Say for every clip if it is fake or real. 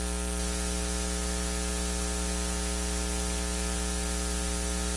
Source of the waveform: real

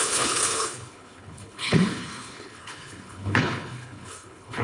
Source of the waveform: fake